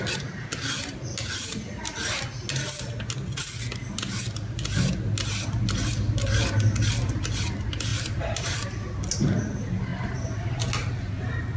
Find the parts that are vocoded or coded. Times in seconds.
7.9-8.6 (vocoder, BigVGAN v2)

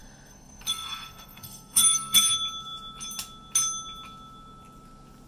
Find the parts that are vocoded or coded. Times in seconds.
0.0-2.2 (codec, SNAC)

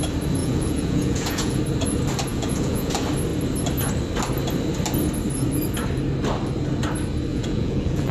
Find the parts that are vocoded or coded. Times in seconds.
0.4-1.6 (vocoder, Vocos); 2.3-2.9; 7.3-8.1

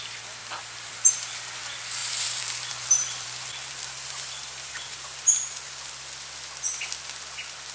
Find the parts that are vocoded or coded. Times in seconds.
0.4-1.1 (vocoder, BigVGAN v2); 2.0-5.9

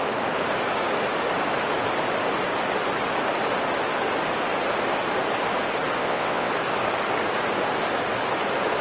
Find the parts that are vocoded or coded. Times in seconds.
6.0-6.5 (vocoder, WaveNeXt)

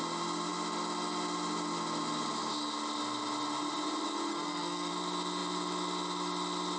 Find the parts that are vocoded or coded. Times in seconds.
4.3-4.9 (codec, SNAC)

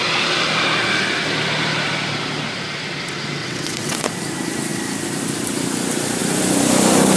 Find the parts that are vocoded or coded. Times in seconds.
3.4-4.1 (vocoder, WaveNeXt)

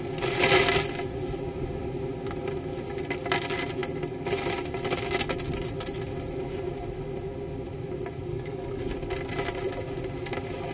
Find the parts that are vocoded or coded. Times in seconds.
8.3-8.9 (codec, DAC)